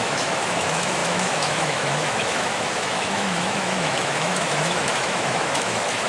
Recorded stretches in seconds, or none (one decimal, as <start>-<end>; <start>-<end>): none